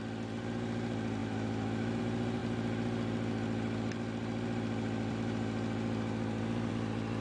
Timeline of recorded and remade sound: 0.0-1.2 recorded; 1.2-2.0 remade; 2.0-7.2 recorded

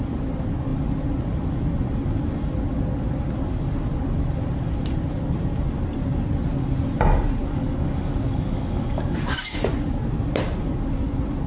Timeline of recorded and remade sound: 0.0-7.4 recorded; 7.4-9.6 remade; 9.6-11.5 recorded

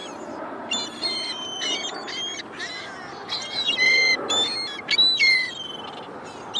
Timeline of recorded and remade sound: 0.0-2.6 remade; 2.6-6.6 recorded

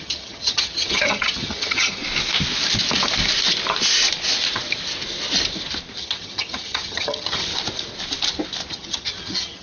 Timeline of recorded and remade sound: 0.0-2.0 remade; 2.0-6.0 recorded; 6.0-7.5 remade; 7.5-8.7 recorded; 8.7-9.6 remade

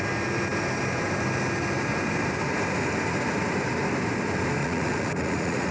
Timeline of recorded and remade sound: 0.0-4.6 recorded; 4.6-5.7 remade